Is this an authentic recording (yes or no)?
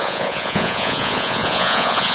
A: no